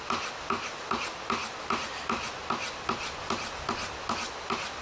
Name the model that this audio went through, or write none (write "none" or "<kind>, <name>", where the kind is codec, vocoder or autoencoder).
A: none